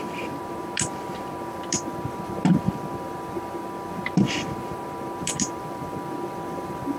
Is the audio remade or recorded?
remade